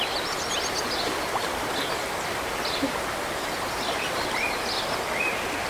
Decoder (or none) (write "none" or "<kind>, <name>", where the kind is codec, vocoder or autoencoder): none